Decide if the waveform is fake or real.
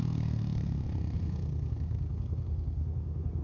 fake